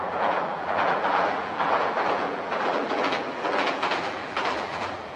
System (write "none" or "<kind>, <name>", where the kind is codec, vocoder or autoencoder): vocoder, BigVGAN v2